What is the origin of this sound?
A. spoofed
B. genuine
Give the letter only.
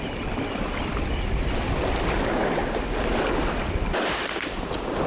B